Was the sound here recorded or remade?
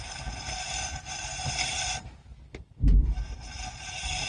recorded